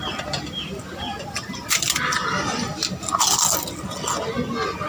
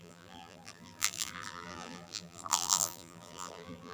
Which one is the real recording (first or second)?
first